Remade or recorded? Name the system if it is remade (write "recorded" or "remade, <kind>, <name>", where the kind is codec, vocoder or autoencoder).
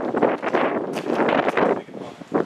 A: recorded